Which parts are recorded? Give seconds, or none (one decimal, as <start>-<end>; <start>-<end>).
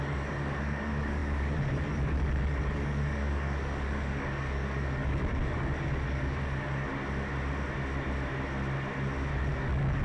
6.9-9.5